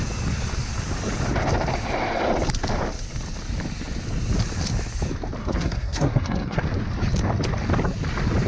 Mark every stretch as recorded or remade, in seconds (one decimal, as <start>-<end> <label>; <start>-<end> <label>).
0.0-5.4 recorded; 5.4-6.6 remade; 6.6-8.5 recorded